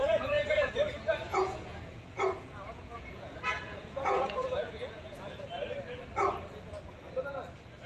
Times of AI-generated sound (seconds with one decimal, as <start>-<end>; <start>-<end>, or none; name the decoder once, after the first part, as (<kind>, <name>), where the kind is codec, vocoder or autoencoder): 0.0-0.7 (vocoder, Vocos); 1.3-5.4